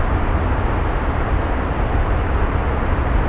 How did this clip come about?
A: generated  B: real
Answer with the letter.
B